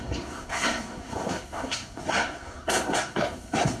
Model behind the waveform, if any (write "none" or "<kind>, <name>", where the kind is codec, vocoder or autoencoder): codec, SNAC